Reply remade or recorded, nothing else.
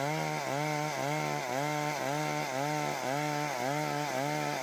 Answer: recorded